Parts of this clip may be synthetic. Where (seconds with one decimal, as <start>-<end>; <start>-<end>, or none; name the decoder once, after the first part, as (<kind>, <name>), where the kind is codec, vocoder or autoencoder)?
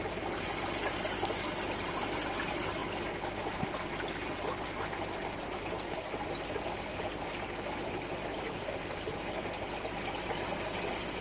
none